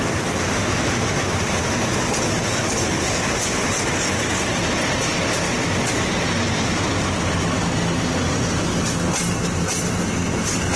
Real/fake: real